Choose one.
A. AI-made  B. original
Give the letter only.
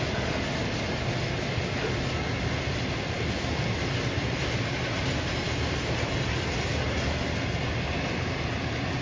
B